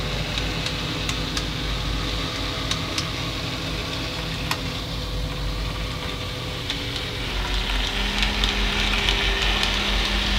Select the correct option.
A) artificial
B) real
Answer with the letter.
B